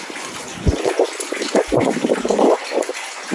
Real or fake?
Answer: fake